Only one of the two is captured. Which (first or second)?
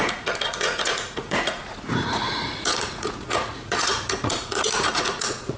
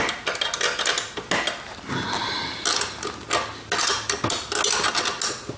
second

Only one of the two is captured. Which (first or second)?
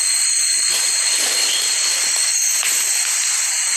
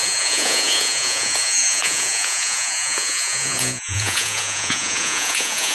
first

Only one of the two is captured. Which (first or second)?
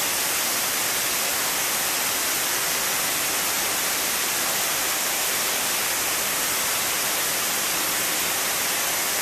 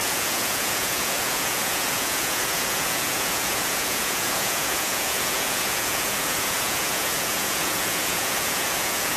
first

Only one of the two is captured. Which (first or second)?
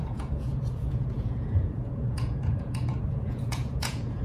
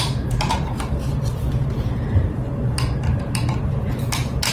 second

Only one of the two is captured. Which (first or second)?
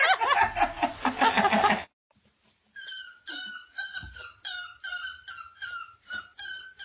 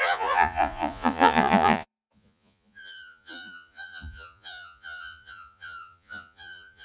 first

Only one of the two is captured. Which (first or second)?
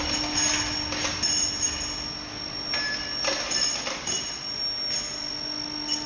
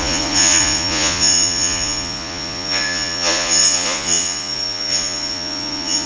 first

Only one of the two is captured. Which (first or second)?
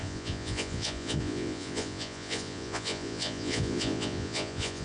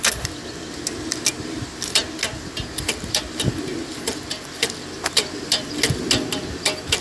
second